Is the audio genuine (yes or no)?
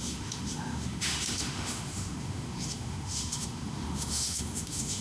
no